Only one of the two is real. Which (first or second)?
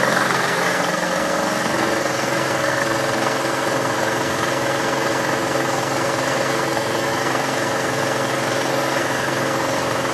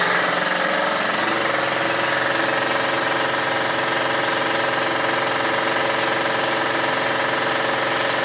second